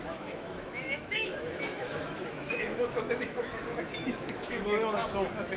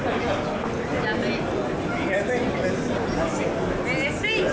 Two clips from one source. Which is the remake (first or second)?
first